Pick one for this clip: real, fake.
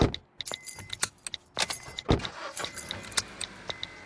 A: real